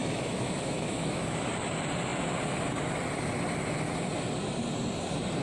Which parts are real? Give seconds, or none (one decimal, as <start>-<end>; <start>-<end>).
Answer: 1.5-5.4